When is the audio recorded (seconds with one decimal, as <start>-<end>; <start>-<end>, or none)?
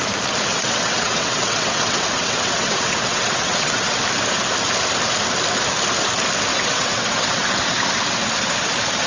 0.0-0.5; 4.0-6.5; 7.5-9.1